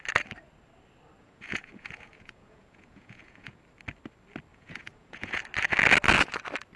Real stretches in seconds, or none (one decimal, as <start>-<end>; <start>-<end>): 0.0-1.2; 3.6-4.5; 5.4-6.8